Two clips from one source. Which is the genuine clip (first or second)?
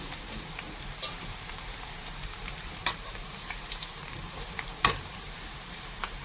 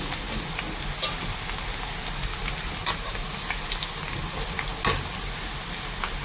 second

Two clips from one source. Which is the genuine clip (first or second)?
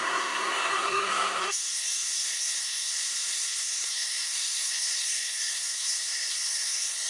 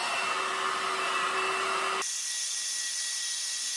second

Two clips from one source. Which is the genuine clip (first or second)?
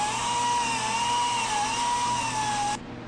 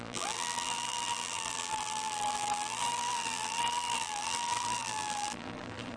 first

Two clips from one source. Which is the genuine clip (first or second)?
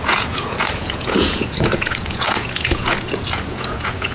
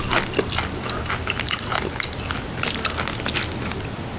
second